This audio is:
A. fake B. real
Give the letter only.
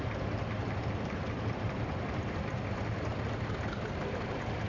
B